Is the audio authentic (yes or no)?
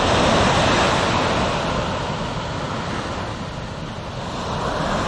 yes